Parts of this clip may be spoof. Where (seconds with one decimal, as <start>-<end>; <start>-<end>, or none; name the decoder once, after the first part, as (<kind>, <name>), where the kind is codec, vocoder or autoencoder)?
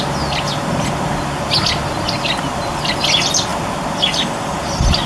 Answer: none